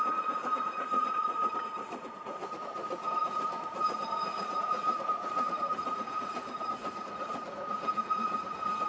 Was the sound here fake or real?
fake